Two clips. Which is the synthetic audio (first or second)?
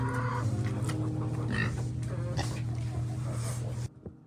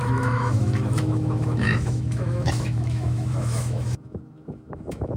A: second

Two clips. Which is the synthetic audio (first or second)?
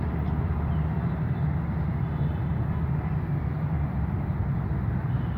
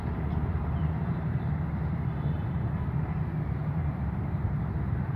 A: second